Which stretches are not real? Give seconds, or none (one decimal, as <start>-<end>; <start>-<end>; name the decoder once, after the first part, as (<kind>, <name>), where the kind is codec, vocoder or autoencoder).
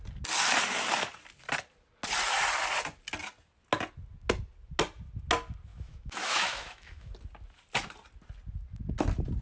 5.7-7.1 (autoencoder, DAC-VAE)